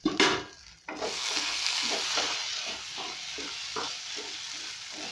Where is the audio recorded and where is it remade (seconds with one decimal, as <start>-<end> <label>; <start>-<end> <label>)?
0.0-1.1 recorded; 1.1-1.9 remade; 1.9-5.1 recorded